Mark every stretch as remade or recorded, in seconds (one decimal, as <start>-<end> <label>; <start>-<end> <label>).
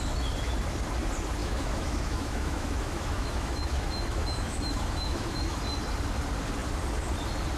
0.0-1.4 recorded; 1.4-5.6 remade; 5.6-7.6 recorded